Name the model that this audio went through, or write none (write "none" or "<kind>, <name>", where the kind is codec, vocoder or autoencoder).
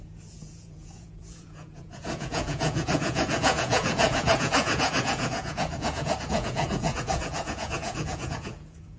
vocoder, Vocos